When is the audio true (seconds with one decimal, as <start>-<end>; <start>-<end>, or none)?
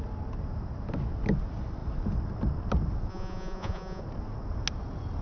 0.0-3.1; 4.0-5.2